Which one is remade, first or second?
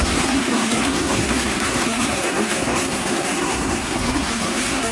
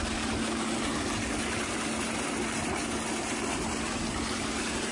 first